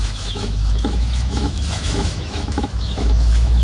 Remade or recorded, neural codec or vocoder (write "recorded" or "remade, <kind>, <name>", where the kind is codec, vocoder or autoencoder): remade, autoencoder, DAC-VAE